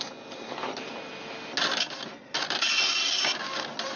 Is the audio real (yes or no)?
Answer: yes